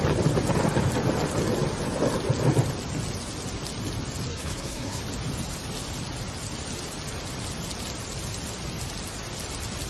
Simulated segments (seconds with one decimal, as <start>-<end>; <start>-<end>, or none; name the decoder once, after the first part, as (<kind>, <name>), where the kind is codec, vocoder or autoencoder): 4.3-5.0 (codec, SNAC)